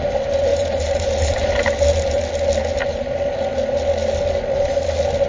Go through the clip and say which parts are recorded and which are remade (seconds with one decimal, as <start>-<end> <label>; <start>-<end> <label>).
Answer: 0.0-0.5 recorded; 0.5-2.2 remade; 2.2-2.6 recorded; 2.6-3.1 remade; 3.1-5.3 recorded